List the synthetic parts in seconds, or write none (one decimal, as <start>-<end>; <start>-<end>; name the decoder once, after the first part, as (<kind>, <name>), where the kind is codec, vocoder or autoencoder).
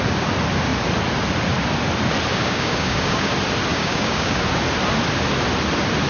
2.3-3.3 (codec, DAC); 3.7-4.4